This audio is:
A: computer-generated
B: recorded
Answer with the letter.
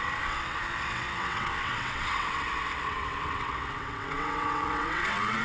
A